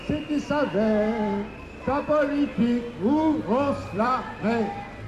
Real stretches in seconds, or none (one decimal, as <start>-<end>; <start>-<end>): 0.0-3.8